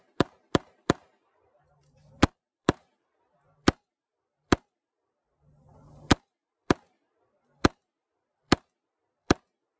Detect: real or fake fake